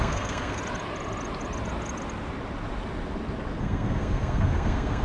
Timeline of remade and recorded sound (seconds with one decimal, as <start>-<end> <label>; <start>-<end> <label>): 0.0-0.6 remade; 0.6-3.6 recorded; 3.6-5.0 remade

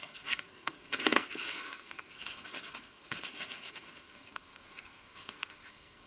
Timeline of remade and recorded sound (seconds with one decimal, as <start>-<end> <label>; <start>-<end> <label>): 0.0-6.1 remade

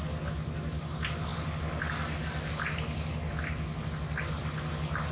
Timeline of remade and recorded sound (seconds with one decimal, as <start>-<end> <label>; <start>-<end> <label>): 0.0-5.1 recorded

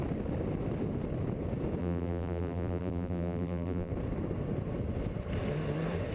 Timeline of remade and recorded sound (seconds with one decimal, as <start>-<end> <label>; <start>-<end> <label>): 0.0-1.8 recorded; 1.8-3.9 remade; 3.9-6.1 recorded